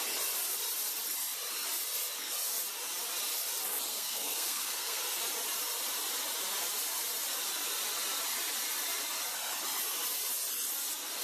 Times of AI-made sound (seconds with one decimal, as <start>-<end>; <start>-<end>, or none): 3.9-5.0